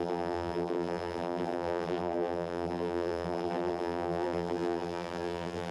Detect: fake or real fake